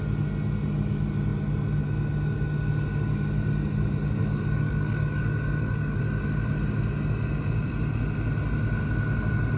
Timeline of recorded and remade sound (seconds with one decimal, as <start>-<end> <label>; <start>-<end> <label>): 0.0-4.2 recorded; 4.2-6.0 remade; 6.0-9.6 recorded